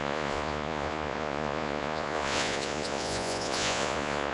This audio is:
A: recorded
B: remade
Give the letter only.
B